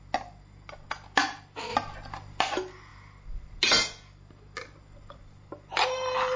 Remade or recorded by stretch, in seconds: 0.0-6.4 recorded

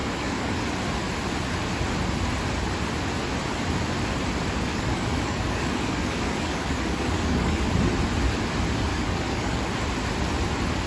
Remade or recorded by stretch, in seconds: 0.0-0.6 remade; 0.6-4.7 recorded; 4.7-7.7 remade; 7.7-8.9 recorded; 8.9-9.7 remade; 9.7-10.9 recorded

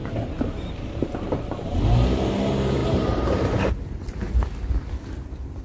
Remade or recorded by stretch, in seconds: 0.0-2.8 recorded; 2.8-4.3 remade; 4.3-5.6 recorded

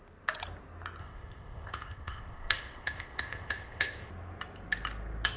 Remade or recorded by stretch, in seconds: 0.0-1.0 recorded; 1.0-4.1 remade; 4.1-5.4 recorded